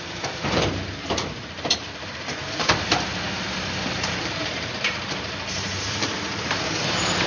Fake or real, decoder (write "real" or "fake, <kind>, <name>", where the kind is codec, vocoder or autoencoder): fake, vocoder, BigVGAN v2